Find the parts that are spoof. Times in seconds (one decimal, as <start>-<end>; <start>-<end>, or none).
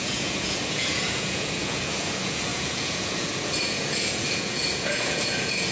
0.0-5.7